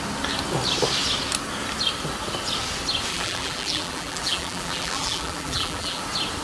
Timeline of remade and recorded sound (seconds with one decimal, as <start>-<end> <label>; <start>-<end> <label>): 0.0-3.1 recorded; 3.1-6.0 remade; 6.0-6.4 recorded